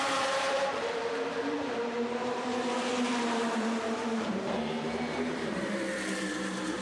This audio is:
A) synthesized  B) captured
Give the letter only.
A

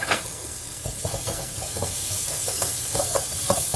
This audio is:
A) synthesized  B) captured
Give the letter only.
A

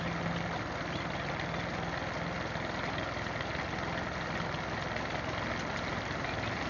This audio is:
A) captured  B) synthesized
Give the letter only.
A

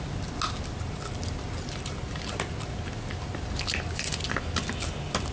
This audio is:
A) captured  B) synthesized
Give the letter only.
A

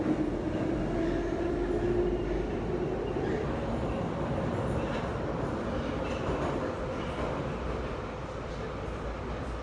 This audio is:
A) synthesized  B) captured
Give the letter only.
B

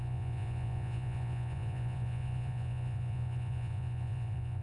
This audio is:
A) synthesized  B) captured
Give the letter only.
A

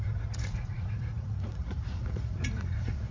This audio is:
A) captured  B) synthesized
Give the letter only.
B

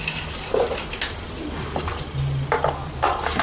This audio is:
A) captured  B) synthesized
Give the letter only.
A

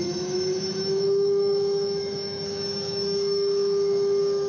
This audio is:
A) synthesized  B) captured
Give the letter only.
A